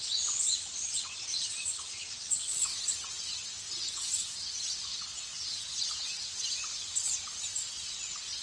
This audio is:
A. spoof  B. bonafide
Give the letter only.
A